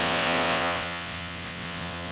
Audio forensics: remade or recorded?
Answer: remade